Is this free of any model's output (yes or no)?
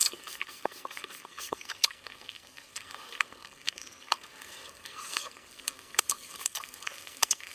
no